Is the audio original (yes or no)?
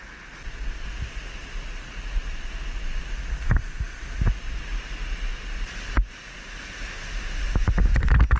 yes